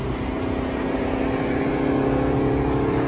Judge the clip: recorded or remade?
recorded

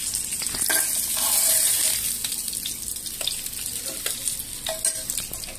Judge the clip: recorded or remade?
recorded